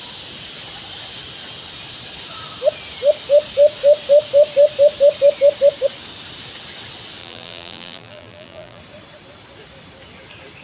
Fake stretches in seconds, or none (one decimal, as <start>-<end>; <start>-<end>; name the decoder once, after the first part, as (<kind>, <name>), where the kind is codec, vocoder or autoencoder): 7.2-8.8 (vocoder, BigVGAN v2)